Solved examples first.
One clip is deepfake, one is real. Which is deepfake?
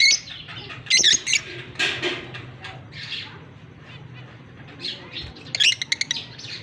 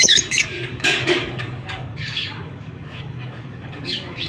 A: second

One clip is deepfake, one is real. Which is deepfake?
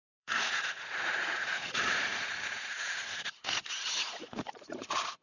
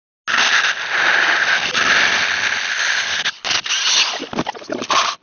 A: first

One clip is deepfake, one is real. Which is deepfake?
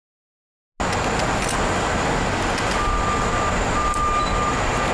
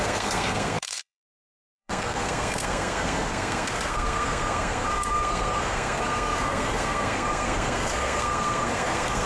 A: second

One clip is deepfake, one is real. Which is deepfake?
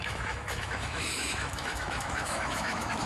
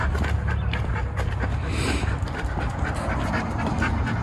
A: first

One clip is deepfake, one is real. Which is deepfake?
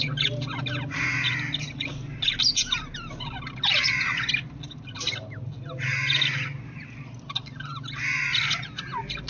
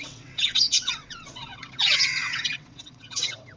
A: second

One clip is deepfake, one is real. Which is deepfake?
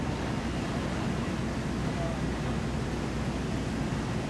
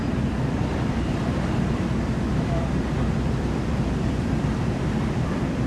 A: second